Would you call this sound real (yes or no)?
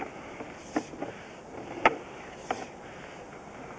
yes